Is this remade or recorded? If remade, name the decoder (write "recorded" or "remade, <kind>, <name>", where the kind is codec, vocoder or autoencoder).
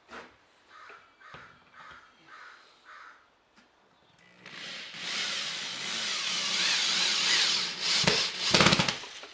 recorded